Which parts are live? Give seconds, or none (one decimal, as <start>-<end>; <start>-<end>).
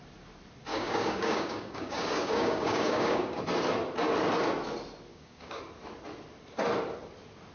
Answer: 0.0-0.7; 3.4-5.1; 5.6-7.5